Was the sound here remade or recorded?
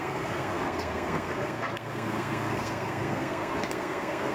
remade